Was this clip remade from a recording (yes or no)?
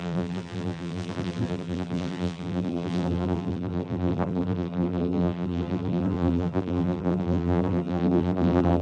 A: yes